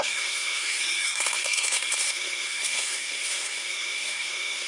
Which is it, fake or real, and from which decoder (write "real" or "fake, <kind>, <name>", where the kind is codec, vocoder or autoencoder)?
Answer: fake, codec, SNAC